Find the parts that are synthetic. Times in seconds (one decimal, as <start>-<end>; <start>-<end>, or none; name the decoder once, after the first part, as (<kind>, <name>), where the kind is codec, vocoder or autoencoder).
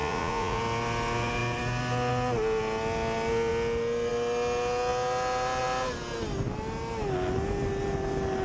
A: 0.0-0.6 (vocoder, Vocos)